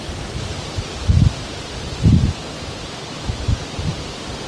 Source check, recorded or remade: recorded